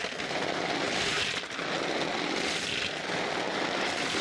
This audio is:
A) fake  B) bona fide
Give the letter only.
B